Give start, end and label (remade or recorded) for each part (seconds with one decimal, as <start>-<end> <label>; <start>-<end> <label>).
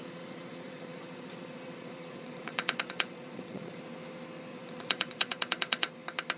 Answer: 0.0-3.8 remade; 3.8-4.5 recorded; 4.5-5.9 remade; 5.9-6.4 recorded